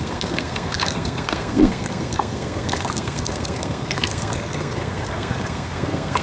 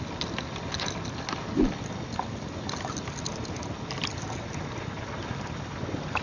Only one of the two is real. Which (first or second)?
second